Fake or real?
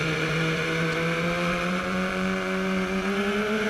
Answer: fake